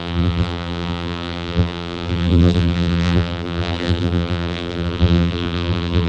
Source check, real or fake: fake